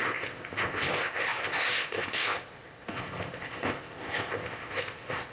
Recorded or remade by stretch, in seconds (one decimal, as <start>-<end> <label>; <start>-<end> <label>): 0.0-5.3 remade